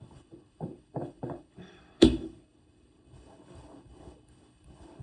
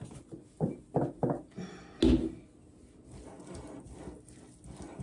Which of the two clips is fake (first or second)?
first